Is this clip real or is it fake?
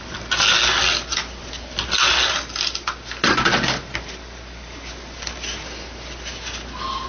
real